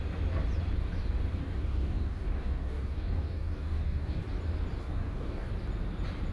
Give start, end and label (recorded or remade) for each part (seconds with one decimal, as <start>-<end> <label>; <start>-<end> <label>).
0.0-1.4 recorded; 1.4-4.2 remade; 4.2-4.8 recorded; 4.8-5.5 remade; 5.5-6.3 recorded